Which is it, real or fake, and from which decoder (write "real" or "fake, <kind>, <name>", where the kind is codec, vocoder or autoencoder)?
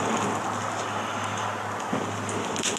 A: real